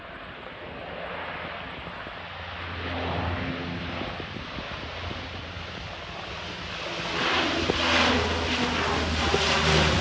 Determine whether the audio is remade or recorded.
recorded